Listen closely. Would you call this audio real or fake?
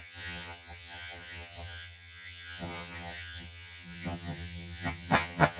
fake